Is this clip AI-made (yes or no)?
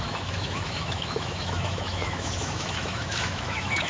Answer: yes